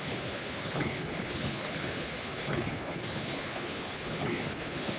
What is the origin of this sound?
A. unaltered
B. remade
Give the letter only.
B